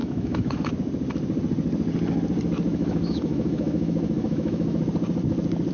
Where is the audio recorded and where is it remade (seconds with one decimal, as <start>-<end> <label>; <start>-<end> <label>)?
0.0-0.7 remade; 0.7-2.7 recorded; 2.7-4.8 remade; 4.8-5.7 recorded